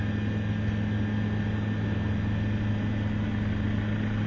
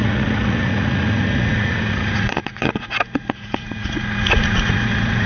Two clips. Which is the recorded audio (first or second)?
first